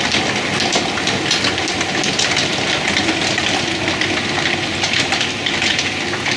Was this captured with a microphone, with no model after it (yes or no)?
yes